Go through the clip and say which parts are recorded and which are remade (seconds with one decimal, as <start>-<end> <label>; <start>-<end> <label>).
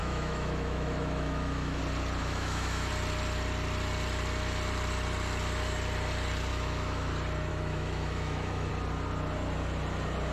0.0-1.8 remade; 1.8-2.2 recorded; 2.2-2.9 remade; 2.9-6.5 recorded; 6.5-7.1 remade; 7.1-7.5 recorded; 7.5-8.7 remade; 8.7-10.3 recorded